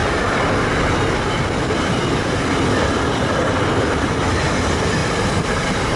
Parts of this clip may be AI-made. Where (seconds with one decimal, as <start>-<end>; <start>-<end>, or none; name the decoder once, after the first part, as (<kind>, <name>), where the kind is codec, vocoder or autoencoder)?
5.0-6.0 (vocoder, BigVGAN v2)